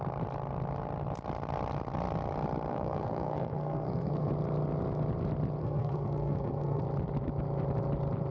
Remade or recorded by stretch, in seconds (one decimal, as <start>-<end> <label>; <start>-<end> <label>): 0.0-2.7 recorded; 2.7-4.3 remade; 4.3-5.6 recorded; 5.6-6.8 remade; 6.8-8.3 recorded